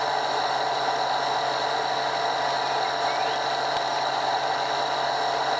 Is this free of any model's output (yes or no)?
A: yes